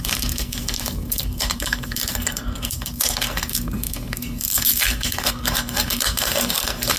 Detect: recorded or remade remade